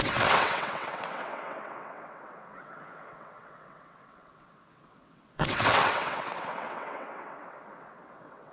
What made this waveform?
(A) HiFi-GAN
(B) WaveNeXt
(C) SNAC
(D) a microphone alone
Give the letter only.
B